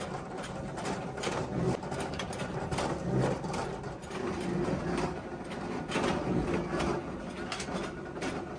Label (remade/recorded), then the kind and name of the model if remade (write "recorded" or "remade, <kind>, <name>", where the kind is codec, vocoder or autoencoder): recorded